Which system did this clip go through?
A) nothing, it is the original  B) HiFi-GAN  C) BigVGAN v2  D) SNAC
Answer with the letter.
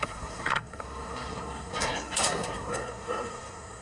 D